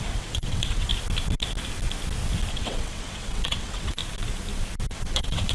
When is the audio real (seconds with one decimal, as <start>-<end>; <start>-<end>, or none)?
0.9-2.5; 4.0-4.9